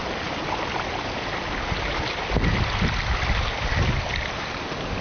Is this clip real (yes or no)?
yes